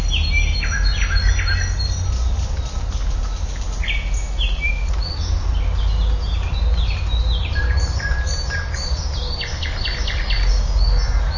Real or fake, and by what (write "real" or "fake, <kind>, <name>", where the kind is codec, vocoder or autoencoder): real